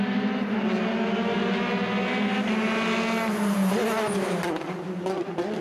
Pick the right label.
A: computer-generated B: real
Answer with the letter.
B